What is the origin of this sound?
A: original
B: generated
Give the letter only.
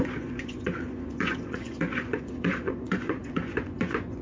B